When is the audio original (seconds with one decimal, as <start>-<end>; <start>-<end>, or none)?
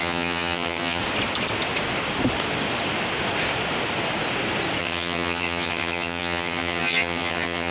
1.0-4.8